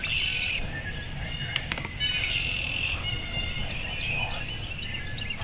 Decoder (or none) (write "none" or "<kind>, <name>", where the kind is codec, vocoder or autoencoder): none